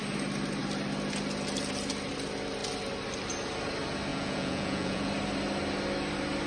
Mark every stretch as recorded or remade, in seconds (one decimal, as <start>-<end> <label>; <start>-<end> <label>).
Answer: 0.0-4.1 recorded; 4.1-5.1 remade; 5.1-6.5 recorded